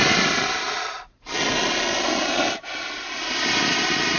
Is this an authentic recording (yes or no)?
yes